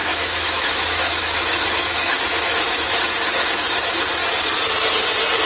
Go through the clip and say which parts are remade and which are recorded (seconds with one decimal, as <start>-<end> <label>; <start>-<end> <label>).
0.0-3.0 remade; 3.0-5.5 recorded